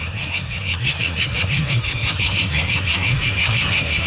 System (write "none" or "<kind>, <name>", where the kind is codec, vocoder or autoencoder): codec, SNAC